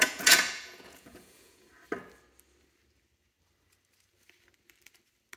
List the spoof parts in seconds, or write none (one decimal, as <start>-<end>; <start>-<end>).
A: 0.0-1.7